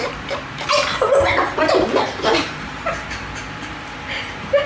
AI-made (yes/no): yes